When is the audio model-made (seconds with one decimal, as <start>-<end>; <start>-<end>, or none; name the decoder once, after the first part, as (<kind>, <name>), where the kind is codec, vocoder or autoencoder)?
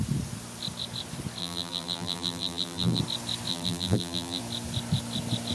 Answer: 1.4-3.0 (vocoder, BigVGAN v2); 3.5-4.4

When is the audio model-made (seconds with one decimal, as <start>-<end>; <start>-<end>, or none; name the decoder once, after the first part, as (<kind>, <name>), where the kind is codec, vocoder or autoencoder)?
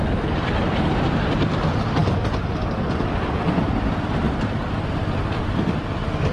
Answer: none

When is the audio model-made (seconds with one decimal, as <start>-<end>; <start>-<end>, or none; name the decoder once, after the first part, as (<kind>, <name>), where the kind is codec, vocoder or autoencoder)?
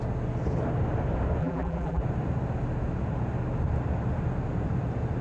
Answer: 1.4-2.0 (vocoder, BigVGAN v2)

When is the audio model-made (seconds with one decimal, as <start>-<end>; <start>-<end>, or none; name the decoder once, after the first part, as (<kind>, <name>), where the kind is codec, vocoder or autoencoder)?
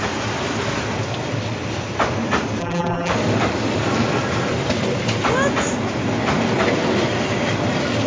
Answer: 2.6-3.1 (vocoder, BigVGAN v2)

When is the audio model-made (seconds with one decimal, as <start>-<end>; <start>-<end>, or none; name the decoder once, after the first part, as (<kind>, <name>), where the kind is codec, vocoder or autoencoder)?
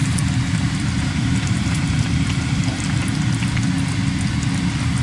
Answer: 0.0-3.0 (vocoder, BigVGAN v2)